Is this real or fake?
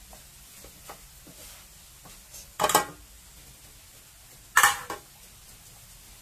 real